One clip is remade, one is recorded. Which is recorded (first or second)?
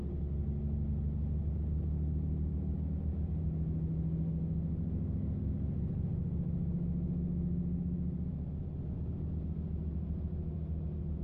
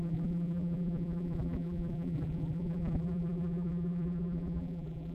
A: first